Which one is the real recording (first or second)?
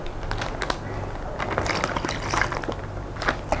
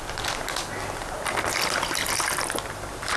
first